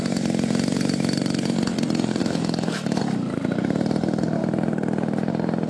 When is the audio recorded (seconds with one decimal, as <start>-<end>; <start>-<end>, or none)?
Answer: 0.0-2.2; 3.0-5.7